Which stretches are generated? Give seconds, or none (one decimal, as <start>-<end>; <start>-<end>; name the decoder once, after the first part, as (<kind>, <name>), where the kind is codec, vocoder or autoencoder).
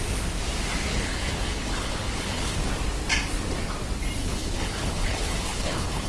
0.9-2.7 (codec, HILCodec); 4.2-6.1